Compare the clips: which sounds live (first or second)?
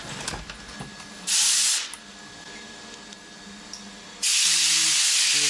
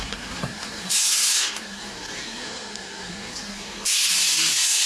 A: first